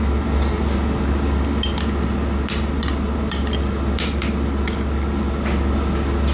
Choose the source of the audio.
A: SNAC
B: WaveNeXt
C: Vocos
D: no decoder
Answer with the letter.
D